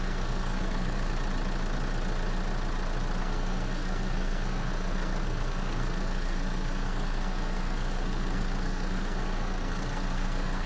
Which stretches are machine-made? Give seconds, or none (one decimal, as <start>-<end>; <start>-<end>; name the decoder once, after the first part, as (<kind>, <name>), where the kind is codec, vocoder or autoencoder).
0.0-1.1 (codec, SNAC); 3.2-10.7